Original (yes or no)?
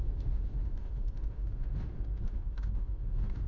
no